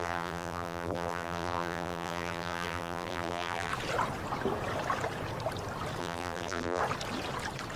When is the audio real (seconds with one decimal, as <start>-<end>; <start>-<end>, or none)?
3.7-6.0; 6.8-7.8